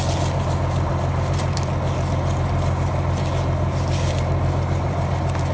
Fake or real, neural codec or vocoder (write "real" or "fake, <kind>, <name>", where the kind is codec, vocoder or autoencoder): real